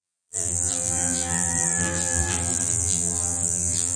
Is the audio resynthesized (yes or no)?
yes